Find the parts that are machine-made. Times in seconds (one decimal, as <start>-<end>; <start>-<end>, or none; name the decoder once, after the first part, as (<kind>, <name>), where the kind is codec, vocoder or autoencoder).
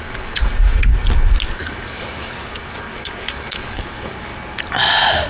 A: 0.0-0.9 (codec, DAC); 1.5-4.3